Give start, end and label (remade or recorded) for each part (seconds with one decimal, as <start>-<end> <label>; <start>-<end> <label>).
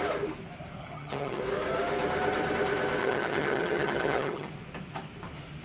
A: 0.0-0.8 recorded; 0.8-1.4 remade; 1.4-3.0 recorded; 3.0-4.5 remade; 4.5-5.6 recorded